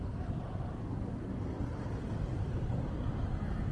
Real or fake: real